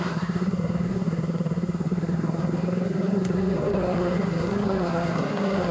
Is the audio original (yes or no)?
no